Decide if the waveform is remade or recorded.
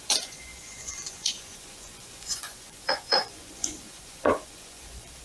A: remade